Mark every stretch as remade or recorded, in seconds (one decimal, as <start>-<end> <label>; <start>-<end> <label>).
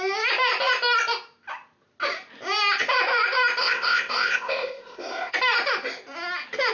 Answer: 0.0-3.6 recorded; 3.6-5.3 remade; 5.3-6.7 recorded